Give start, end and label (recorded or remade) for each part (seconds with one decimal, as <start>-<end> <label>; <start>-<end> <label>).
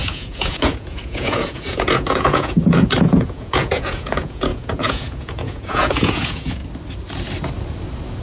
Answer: 0.0-6.6 remade; 6.6-8.2 recorded